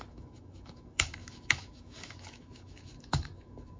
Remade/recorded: remade